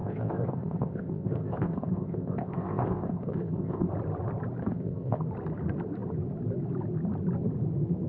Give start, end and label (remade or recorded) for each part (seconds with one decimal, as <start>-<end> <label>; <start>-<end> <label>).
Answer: 0.0-3.9 remade; 3.9-4.6 recorded; 4.6-5.2 remade; 5.2-8.1 recorded